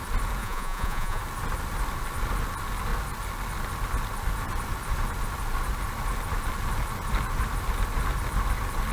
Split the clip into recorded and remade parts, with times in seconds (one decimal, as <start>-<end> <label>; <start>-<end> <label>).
0.0-0.4 recorded; 0.4-1.2 remade; 1.2-8.9 recorded